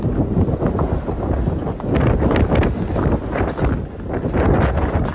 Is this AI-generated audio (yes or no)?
no